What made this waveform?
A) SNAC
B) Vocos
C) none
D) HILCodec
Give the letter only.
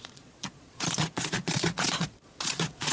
B